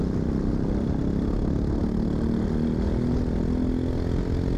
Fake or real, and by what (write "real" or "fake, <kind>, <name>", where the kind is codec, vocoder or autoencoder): real